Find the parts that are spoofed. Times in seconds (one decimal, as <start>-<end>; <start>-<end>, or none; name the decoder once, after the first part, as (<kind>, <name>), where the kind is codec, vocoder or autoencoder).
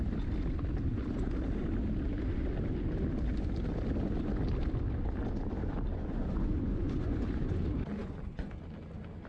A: 5.9-7.6 (vocoder, Vocos); 8.0-8.5